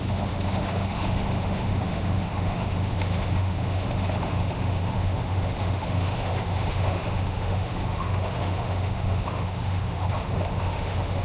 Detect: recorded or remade remade